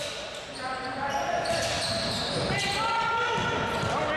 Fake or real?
real